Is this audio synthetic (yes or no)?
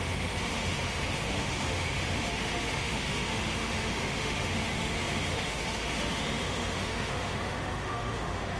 yes